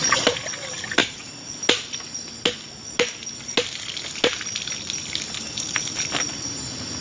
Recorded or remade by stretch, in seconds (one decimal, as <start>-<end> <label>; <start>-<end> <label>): 0.0-7.0 recorded